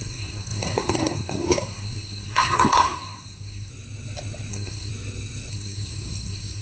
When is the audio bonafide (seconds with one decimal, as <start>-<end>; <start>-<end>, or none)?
3.7-4.5; 4.9-5.5